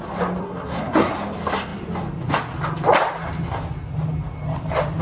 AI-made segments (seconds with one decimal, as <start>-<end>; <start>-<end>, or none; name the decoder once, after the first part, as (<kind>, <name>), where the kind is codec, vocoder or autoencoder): 0.4-1.1 (codec, SNAC)